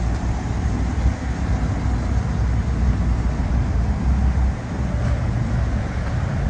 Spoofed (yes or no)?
no